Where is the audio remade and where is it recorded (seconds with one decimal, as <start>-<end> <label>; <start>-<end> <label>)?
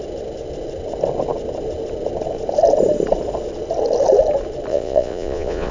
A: 0.0-4.7 recorded; 4.7-5.7 remade